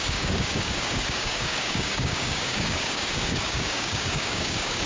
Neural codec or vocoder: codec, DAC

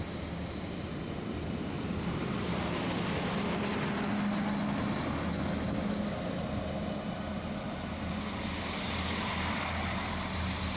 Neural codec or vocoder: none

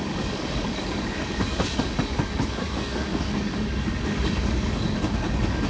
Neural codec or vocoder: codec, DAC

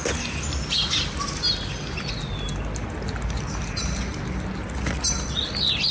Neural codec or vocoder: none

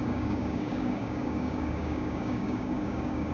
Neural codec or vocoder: codec, DAC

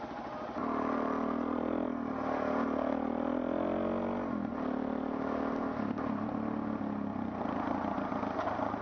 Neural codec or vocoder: none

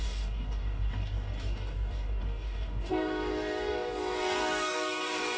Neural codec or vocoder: codec, DAC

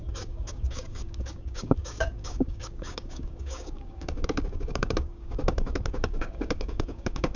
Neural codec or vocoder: codec, DAC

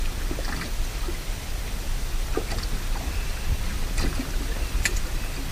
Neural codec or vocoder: none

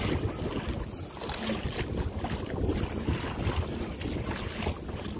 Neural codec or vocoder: none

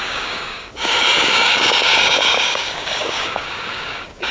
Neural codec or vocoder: codec, DAC